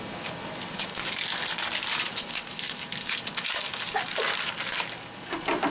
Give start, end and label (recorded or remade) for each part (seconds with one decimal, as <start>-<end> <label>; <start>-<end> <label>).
0.0-5.7 recorded